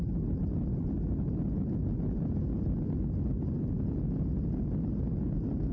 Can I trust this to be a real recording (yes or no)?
yes